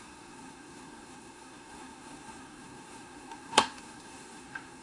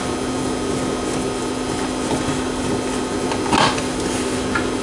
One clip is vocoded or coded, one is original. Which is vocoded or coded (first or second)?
first